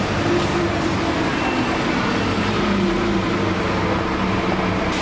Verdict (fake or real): fake